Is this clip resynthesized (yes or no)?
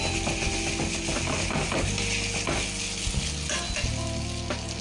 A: no